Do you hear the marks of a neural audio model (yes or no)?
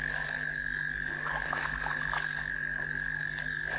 yes